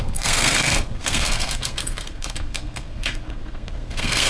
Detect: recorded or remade remade